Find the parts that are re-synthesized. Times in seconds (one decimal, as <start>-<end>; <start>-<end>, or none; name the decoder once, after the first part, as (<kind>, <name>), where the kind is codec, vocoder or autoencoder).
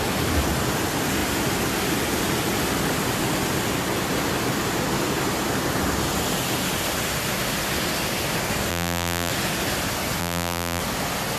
8.7-9.3 (vocoder, BigVGAN v2); 10.2-10.8